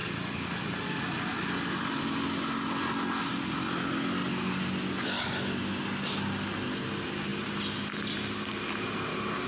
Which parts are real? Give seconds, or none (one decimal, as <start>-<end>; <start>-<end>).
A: 0.0-9.5